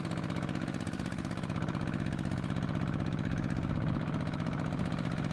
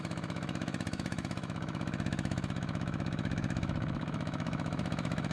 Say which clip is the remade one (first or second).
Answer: second